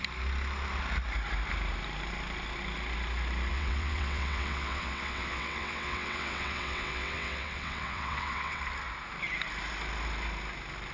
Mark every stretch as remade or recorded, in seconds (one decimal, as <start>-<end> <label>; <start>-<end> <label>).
0.0-3.5 recorded; 3.5-8.6 remade; 8.6-10.9 recorded